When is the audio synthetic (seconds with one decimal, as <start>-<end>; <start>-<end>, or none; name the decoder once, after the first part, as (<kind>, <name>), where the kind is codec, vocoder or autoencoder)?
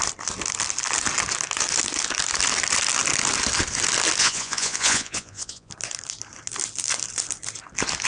4.2-5.7 (vocoder, Vocos)